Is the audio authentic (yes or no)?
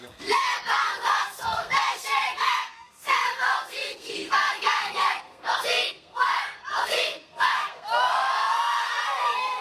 no